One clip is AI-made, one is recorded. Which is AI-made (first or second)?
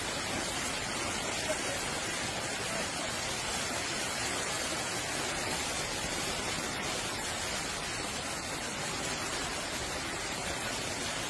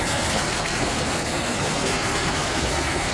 second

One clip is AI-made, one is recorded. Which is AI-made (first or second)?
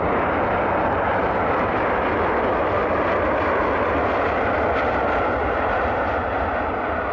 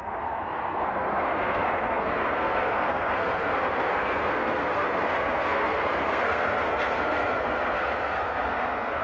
second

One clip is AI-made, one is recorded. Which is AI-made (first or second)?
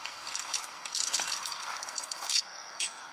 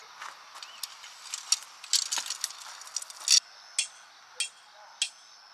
first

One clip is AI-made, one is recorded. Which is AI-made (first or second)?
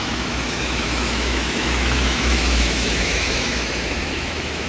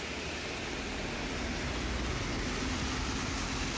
first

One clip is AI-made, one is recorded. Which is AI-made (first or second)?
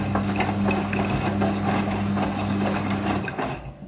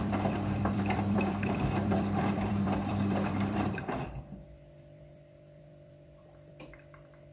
second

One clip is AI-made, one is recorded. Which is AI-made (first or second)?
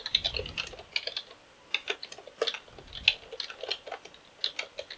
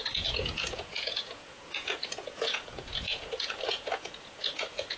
second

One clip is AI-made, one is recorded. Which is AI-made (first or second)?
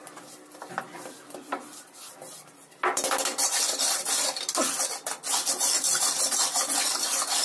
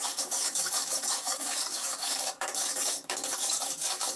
second